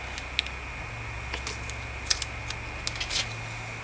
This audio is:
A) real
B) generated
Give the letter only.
A